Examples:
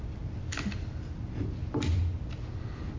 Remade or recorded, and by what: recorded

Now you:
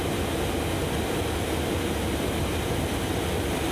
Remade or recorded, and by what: recorded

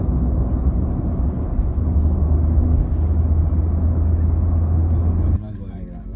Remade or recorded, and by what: recorded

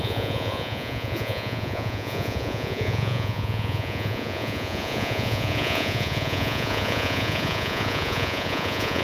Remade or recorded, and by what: remade, vocoder, Vocos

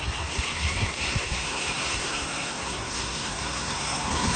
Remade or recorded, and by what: remade, codec, SNAC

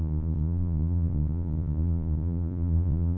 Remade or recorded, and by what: remade, vocoder, Vocos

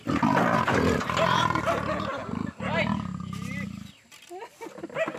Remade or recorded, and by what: recorded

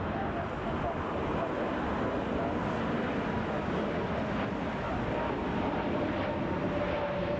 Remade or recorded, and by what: recorded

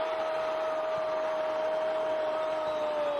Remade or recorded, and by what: recorded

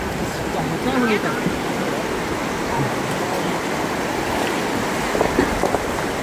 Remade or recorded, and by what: recorded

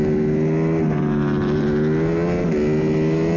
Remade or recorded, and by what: recorded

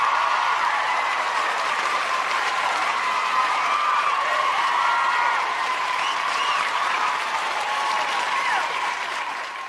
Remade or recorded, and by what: remade, vocoder, BigVGAN v2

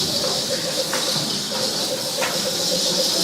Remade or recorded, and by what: recorded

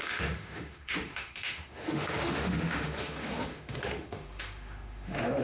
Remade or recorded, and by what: remade, autoencoder, DAC-VAE